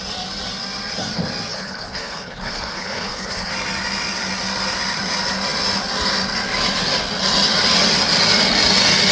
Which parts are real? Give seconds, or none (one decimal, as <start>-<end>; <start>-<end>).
0.0-1.5; 3.5-9.1